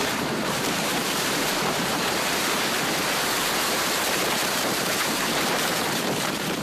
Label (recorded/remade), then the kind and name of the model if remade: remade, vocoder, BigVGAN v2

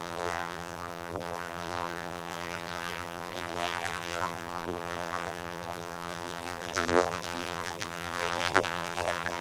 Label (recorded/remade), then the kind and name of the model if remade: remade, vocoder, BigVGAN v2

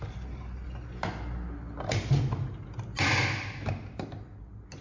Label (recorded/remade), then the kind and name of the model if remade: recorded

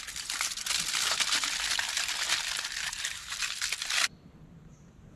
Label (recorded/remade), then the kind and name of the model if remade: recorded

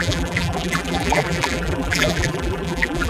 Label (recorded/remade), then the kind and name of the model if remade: remade, vocoder, BigVGAN v2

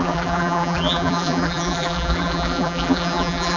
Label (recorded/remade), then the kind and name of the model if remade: remade, vocoder, BigVGAN v2